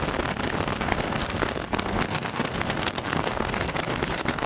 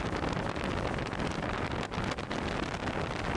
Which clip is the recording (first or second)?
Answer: second